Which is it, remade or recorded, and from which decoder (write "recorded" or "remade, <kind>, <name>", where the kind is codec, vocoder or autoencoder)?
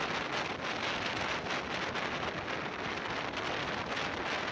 recorded